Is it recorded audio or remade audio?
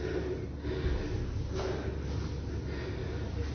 recorded